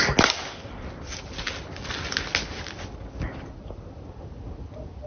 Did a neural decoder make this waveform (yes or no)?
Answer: no